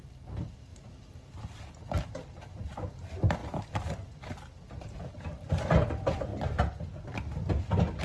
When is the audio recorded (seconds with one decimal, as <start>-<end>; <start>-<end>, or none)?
0.7-1.6; 6.3-8.0